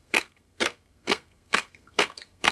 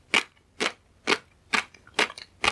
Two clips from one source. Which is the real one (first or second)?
second